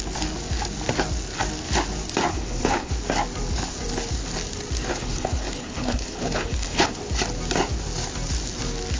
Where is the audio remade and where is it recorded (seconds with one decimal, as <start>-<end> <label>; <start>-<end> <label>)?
0.0-2.3 recorded; 2.3-2.9 remade; 2.9-4.9 recorded; 4.9-7.0 remade; 7.0-9.0 recorded